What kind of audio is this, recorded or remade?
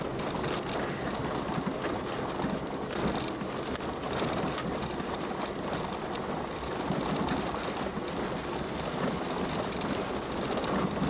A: recorded